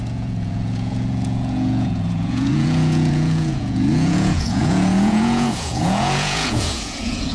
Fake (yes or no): yes